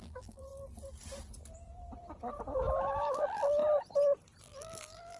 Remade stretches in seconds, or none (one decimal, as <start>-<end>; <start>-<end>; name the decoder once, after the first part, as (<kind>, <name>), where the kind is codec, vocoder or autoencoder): 0.0-0.5 (vocoder, BigVGAN v2); 2.8-3.6; 4.4-5.2

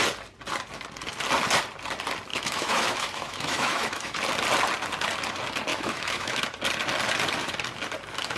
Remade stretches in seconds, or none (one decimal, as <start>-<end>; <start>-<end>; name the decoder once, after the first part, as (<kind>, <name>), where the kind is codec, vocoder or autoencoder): 2.3-4.2 (autoencoder, DAC-VAE); 5.7-6.4

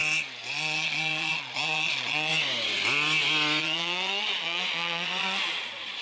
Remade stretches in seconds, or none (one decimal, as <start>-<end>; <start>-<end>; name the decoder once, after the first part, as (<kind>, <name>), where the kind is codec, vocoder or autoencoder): 0.5-2.3 (vocoder, Vocos); 3.6-6.0

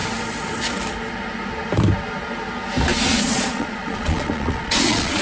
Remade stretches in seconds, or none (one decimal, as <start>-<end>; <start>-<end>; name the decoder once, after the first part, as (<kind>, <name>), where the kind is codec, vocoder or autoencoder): 3.1-5.2 (vocoder, Vocos)

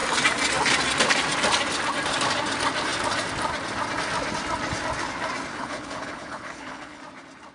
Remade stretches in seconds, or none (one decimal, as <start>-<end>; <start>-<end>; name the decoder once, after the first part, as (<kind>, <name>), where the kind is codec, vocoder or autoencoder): 5.5-7.0 (codec, HILCodec)

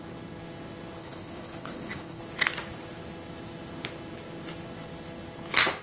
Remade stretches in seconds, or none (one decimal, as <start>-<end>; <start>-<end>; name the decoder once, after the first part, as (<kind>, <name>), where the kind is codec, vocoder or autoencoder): 1.0-2.2 (codec, HILCodec)

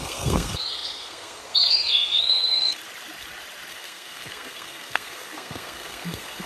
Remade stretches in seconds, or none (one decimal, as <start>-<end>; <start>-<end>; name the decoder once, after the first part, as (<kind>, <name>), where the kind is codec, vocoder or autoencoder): 0.0-2.8 (codec, SNAC); 3.7-6.5

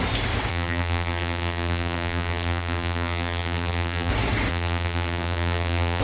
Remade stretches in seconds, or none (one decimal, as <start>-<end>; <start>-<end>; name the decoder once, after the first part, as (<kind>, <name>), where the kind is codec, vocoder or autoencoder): 0.5-4.1 (vocoder, BigVGAN v2); 4.5-6.0